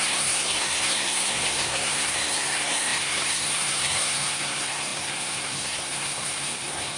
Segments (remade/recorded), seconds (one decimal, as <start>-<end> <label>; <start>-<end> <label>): 0.0-7.0 remade